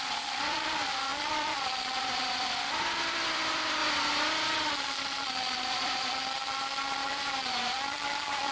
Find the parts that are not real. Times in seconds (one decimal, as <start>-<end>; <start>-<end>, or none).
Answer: 0.0-3.8; 5.1-8.5